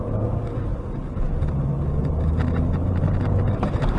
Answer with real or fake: real